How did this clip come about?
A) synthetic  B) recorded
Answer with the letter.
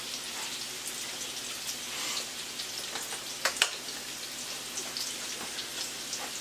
B